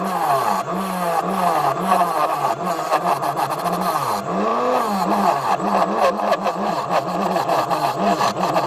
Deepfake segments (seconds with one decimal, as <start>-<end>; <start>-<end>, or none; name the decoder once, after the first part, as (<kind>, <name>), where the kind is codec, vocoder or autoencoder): none

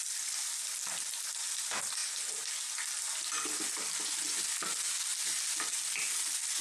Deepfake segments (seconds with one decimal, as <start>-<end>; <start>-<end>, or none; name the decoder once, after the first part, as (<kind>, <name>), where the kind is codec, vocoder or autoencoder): none

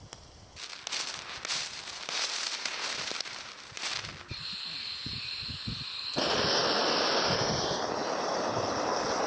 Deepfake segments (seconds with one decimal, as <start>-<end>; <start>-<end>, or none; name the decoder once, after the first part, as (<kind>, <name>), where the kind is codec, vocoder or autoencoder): 1.5-3.8 (vocoder, BigVGAN v2); 6.6-7.1; 8.0-9.3

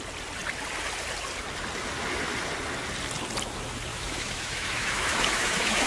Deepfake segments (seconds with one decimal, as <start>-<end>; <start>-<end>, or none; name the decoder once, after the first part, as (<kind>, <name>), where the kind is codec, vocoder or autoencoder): 3.9-5.9 (autoencoder, DAC-VAE)

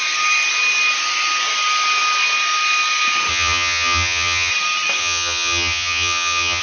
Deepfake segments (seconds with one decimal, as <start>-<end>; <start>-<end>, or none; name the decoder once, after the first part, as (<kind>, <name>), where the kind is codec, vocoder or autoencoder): 3.3-4.5 (vocoder, HiFi-GAN); 5.0-6.6

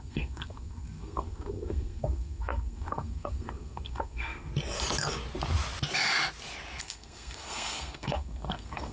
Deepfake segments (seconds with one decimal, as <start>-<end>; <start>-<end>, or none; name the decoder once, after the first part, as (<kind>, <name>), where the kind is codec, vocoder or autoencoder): 0.0-4.5 (codec, SNAC); 6.8-8.9

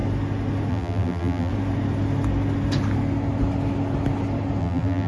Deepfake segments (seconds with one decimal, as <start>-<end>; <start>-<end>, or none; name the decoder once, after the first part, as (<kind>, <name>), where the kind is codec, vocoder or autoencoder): 0.7-1.5 (vocoder, BigVGAN v2); 4.6-5.1

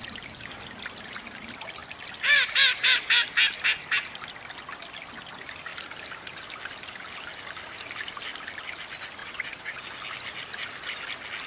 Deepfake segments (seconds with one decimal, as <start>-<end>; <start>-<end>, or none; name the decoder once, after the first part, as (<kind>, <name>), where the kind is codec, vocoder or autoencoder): 9.2-9.8 (vocoder, WaveNeXt)